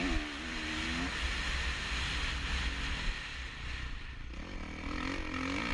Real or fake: real